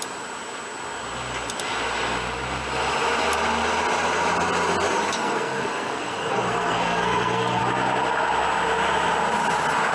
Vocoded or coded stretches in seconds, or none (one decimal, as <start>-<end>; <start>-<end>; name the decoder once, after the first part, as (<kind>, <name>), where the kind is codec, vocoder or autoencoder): 5.2-7.6 (codec, SNAC)